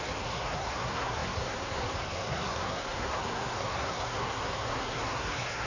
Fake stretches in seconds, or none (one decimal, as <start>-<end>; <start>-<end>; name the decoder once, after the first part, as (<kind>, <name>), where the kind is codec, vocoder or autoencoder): 0.0-5.7 (codec, SNAC)